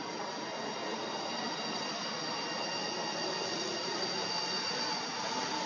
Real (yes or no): yes